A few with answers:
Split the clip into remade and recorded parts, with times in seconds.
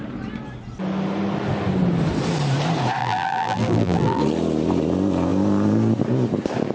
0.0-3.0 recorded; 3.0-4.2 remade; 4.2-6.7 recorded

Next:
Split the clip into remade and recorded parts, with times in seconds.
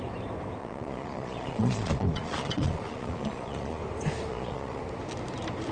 0.0-0.6 recorded; 0.6-3.8 remade; 3.8-4.3 recorded; 4.3-4.8 remade; 4.8-5.7 recorded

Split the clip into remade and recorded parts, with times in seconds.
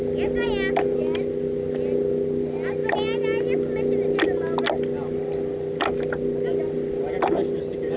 0.0-8.0 recorded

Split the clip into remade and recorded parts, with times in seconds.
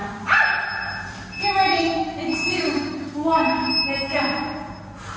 0.0-2.4 recorded; 2.4-3.7 remade; 3.7-5.2 recorded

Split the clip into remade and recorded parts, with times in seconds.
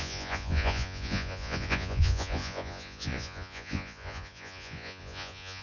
0.0-5.6 remade